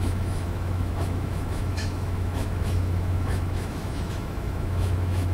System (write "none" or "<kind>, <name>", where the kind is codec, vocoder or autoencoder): autoencoder, DAC-VAE